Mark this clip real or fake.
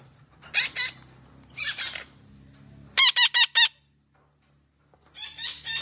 real